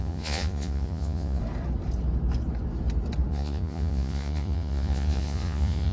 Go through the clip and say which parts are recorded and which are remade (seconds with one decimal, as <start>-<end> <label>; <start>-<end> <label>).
0.0-1.4 remade; 1.4-3.3 recorded; 3.3-5.9 remade